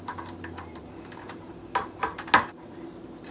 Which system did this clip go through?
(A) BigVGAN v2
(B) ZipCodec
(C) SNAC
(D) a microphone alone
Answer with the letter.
D